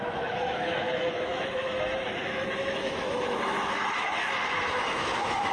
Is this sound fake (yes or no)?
yes